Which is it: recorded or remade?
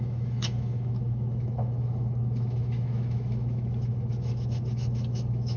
remade